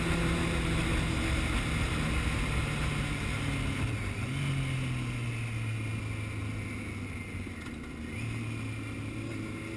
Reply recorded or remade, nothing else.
recorded